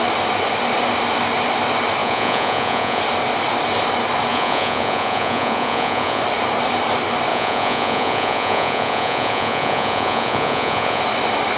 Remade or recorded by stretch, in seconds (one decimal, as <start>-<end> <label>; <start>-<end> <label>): 0.0-2.0 recorded; 2.0-3.0 remade; 3.0-4.3 recorded; 4.3-6.2 remade; 6.2-7.3 recorded; 7.3-11.0 remade; 11.0-11.6 recorded